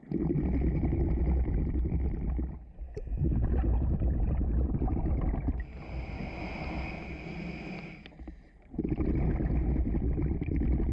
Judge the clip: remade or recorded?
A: recorded